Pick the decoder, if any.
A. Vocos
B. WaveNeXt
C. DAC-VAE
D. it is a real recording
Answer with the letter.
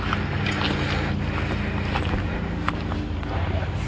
D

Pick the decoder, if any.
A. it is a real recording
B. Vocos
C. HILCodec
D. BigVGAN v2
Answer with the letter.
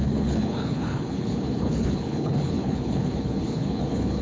C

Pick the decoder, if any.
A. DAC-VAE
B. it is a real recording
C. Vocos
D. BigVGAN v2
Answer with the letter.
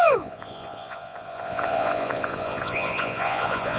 C